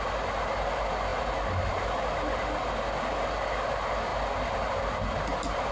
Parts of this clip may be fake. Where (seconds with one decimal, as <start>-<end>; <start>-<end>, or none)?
none